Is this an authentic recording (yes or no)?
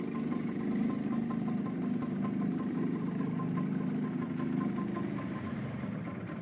yes